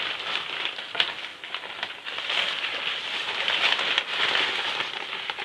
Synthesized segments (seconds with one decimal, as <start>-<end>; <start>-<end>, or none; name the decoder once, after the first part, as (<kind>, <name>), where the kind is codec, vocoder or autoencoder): none